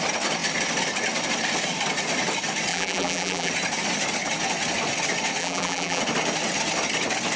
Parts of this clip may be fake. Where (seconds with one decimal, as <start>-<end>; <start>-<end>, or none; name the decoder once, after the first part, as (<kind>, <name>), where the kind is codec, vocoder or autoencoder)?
2.7-3.5 (vocoder, BigVGAN v2); 5.4-6.0